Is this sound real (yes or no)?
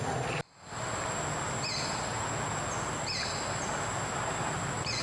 yes